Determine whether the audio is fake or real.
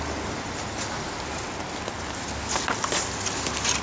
real